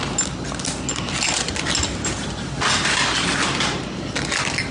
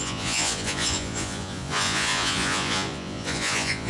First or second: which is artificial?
second